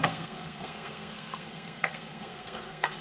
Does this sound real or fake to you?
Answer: fake